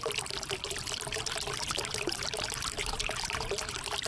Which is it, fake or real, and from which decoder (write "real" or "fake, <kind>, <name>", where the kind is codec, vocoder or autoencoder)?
fake, vocoder, BigVGAN v2